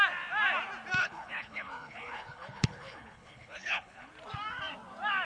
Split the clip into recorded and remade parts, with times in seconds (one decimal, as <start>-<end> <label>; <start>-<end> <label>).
0.0-1.0 recorded; 1.0-4.1 remade; 4.1-5.2 recorded